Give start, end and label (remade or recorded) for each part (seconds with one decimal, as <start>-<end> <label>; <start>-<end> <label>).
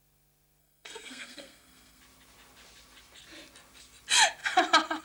0.0-0.6 recorded; 0.6-2.0 remade; 2.0-5.0 recorded